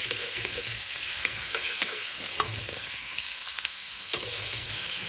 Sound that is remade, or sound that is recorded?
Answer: remade